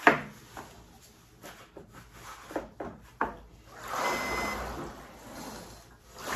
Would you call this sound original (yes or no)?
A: yes